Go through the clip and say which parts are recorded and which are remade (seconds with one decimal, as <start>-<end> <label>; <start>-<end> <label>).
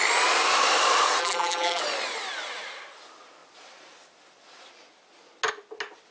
0.0-1.2 recorded; 1.2-1.8 remade; 1.8-6.1 recorded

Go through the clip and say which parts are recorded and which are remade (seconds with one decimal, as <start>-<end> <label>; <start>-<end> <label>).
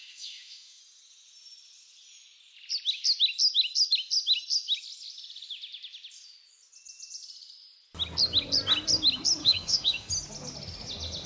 0.0-0.8 remade; 0.8-9.4 recorded; 9.4-10.1 remade; 10.1-11.3 recorded